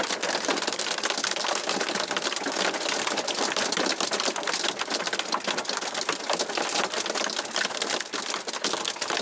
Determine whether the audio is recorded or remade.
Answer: recorded